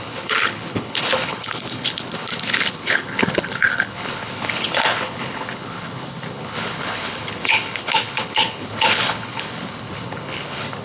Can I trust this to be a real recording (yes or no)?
no